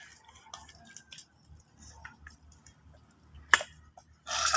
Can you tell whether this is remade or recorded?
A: recorded